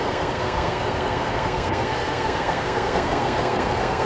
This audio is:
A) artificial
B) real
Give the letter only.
A